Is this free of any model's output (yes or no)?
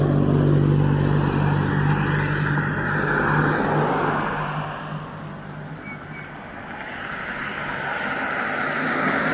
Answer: yes